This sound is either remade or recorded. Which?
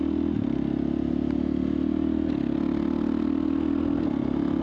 recorded